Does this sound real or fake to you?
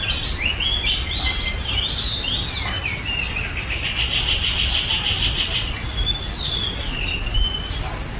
real